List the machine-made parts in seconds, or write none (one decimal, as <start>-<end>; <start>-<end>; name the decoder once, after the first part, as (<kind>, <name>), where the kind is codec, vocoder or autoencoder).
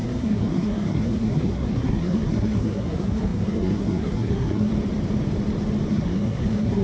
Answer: 0.0-4.7 (codec, SNAC); 5.9-6.8